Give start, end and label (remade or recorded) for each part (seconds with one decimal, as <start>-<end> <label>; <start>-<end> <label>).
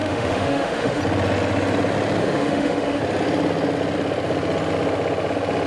0.0-1.0 remade; 1.0-2.2 recorded; 2.2-3.0 remade; 3.0-5.7 recorded